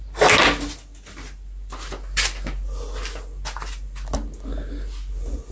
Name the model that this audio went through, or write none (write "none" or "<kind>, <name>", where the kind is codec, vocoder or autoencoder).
none